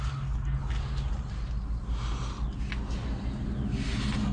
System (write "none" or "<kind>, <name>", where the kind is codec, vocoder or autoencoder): none